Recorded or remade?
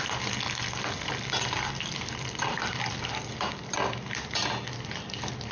recorded